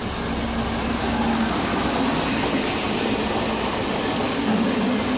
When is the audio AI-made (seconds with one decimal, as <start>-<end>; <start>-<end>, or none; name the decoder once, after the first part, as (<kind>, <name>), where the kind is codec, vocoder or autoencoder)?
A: 1.0-1.7 (codec, DAC); 3.7-4.6